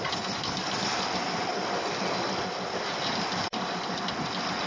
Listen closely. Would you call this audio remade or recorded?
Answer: recorded